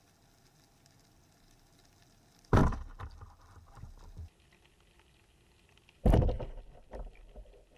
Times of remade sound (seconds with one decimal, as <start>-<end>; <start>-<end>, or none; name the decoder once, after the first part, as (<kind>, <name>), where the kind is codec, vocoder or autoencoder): none